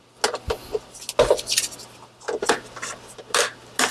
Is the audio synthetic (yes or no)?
no